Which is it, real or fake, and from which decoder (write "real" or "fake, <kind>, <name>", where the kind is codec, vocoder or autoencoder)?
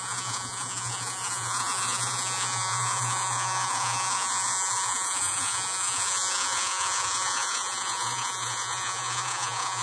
fake, vocoder, Vocos